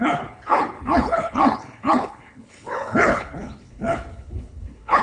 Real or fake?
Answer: fake